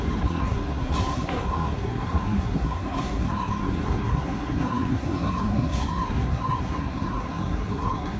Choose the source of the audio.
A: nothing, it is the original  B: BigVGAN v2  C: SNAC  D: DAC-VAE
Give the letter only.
C